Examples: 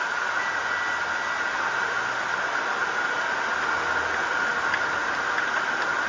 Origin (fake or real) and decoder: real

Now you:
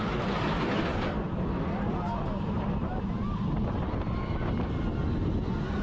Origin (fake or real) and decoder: real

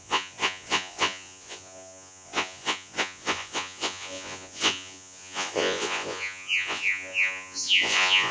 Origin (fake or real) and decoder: fake, vocoder, Vocos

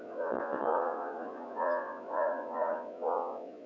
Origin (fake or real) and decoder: fake, vocoder, Vocos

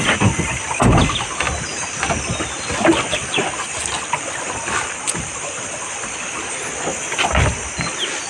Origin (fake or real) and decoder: real